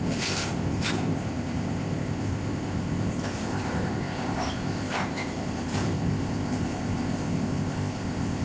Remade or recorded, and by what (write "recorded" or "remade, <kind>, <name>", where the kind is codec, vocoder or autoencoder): remade, codec, ZipCodec